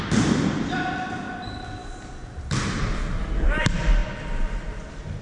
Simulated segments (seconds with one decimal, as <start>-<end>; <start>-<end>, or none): none